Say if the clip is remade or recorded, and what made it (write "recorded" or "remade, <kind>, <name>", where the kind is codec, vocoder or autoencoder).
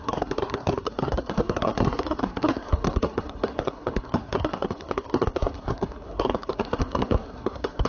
remade, codec, SNAC